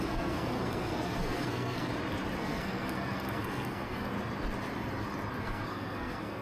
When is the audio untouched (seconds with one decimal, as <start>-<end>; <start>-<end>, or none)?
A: 1.9-2.4; 4.1-5.4